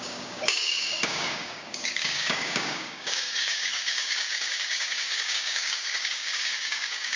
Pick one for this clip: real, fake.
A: fake